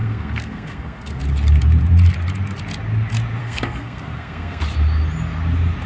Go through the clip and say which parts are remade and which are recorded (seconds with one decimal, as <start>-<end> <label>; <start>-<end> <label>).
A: 0.0-1.2 remade; 1.2-3.4 recorded; 3.4-4.6 remade; 4.6-5.9 recorded